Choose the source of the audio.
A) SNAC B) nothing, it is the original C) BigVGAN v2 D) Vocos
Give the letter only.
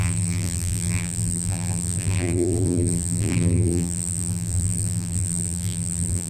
C